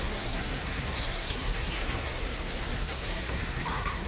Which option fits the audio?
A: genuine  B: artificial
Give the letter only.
B